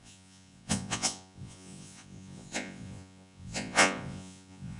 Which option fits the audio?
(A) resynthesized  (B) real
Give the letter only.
A